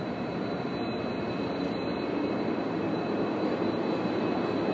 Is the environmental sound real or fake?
real